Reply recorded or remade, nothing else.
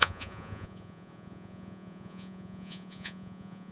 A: remade